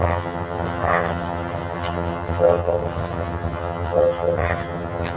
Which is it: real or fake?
fake